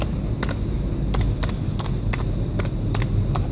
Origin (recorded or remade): recorded